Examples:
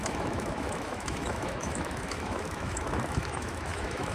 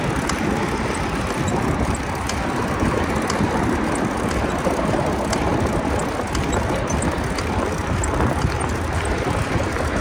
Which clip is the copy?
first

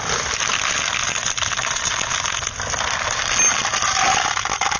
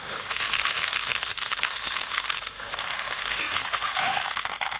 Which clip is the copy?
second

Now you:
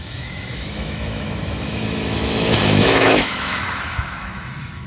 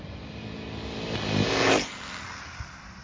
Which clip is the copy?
first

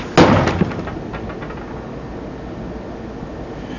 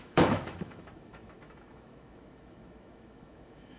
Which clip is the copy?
second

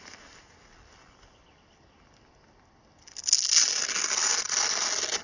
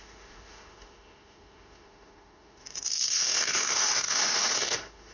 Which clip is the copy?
second